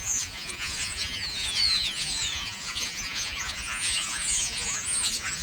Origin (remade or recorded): remade